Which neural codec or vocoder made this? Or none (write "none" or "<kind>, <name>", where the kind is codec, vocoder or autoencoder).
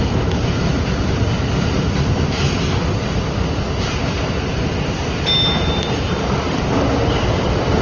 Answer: none